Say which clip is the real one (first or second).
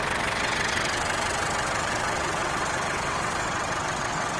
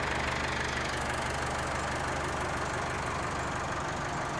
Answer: second